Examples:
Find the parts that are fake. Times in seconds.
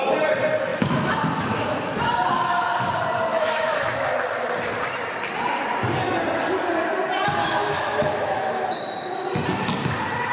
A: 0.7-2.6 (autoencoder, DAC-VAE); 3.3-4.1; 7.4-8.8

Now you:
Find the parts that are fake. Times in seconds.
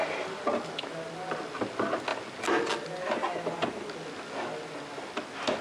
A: none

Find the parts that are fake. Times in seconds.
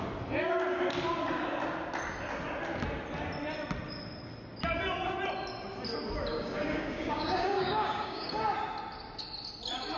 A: 6.3-8.4 (codec, DAC)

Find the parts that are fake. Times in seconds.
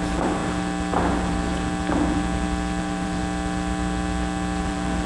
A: 0.0-0.4 (vocoder, BigVGAN v2); 1.1-1.5; 2.8-3.2; 4.6-5.1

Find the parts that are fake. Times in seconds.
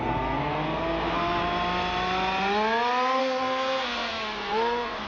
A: 0.0-1.4 (codec, SNAC); 3.2-5.1